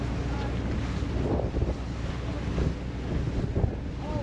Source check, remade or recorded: recorded